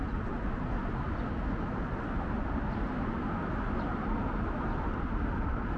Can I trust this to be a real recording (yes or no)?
yes